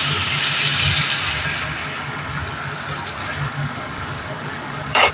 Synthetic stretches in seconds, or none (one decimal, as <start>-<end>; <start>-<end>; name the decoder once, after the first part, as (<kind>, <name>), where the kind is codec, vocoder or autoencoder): 1.8-2.4 (codec, DAC); 3.2-5.1